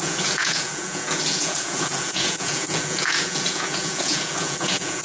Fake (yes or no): yes